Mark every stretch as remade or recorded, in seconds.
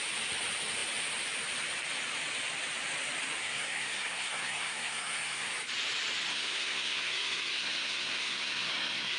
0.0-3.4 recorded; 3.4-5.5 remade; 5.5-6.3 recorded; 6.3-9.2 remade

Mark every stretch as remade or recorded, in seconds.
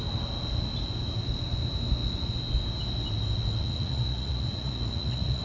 0.0-3.6 recorded; 3.6-5.4 remade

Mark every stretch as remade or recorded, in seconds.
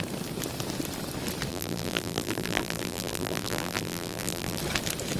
0.0-1.5 recorded; 1.5-4.6 remade; 4.6-5.2 recorded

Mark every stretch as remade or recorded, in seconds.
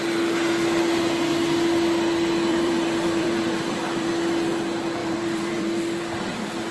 0.0-2.5 recorded; 2.5-4.1 remade; 4.1-5.0 recorded; 5.0-6.2 remade; 6.2-6.7 recorded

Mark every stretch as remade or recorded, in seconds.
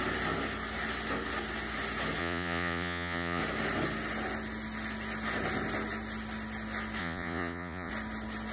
0.0-2.2 recorded; 2.2-3.4 remade; 3.4-7.0 recorded; 7.0-7.9 remade; 7.9-8.5 recorded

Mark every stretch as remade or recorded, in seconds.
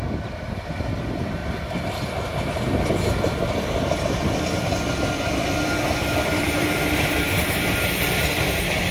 0.0-1.4 recorded; 1.4-4.0 remade; 4.0-6.0 recorded; 6.0-7.5 remade; 7.5-8.9 recorded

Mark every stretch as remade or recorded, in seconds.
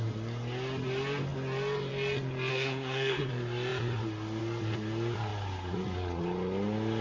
0.0-2.5 recorded; 2.5-3.3 remade; 3.3-7.0 recorded